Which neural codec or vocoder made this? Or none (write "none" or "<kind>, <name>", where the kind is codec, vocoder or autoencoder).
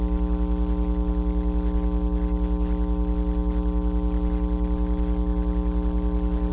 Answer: none